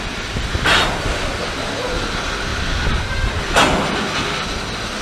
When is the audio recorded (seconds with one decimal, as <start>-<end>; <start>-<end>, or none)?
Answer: 0.0-2.5; 3.4-5.0